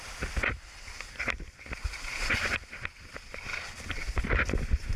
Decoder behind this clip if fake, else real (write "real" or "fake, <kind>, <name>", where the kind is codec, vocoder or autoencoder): real